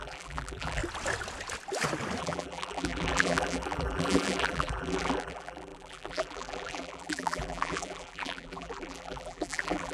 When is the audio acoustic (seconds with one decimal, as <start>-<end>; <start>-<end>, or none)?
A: 0.8-2.2